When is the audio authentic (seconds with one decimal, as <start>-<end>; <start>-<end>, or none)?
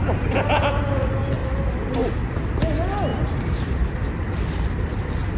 0.0-3.1